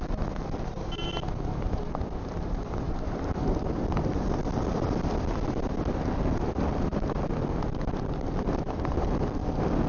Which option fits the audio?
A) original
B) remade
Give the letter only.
A